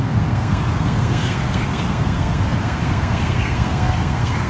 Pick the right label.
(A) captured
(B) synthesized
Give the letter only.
B